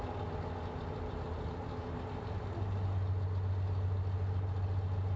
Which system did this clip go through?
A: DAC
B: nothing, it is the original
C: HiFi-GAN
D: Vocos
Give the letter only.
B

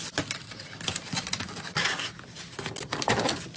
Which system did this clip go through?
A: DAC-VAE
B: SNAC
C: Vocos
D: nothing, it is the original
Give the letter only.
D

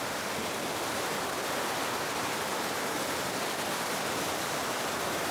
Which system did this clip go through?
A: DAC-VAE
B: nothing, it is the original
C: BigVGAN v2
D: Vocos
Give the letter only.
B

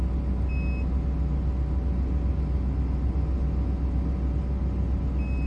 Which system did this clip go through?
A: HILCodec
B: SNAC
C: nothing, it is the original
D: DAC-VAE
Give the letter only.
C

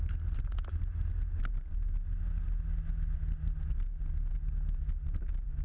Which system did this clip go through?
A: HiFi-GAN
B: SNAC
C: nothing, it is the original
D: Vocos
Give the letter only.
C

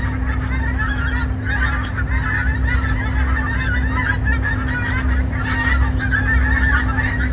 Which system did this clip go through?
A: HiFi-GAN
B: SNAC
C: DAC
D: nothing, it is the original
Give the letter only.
D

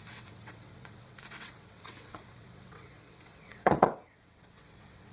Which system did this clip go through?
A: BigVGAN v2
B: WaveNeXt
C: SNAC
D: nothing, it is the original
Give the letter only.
B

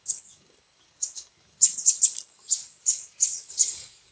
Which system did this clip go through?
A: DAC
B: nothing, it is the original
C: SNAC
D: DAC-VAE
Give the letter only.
A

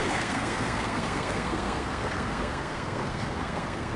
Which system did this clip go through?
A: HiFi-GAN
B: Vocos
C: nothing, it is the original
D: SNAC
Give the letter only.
D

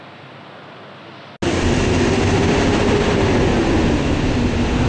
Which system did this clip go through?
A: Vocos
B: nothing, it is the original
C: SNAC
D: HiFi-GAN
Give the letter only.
B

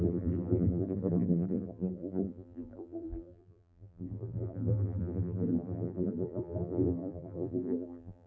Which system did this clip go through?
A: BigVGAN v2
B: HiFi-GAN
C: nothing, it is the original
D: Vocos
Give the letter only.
A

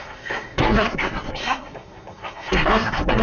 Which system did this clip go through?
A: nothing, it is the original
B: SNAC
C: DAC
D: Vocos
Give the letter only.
B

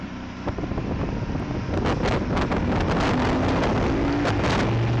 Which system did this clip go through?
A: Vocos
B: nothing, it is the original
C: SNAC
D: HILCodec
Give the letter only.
B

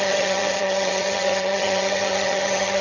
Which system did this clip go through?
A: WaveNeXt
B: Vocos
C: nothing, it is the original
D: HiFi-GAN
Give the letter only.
D